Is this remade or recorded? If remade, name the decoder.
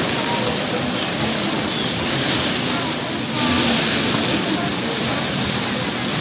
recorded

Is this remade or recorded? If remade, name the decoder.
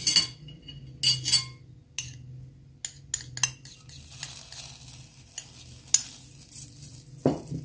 recorded